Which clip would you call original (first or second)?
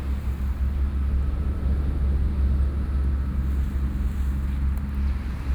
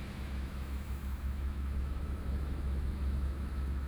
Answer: first